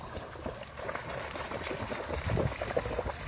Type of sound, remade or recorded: recorded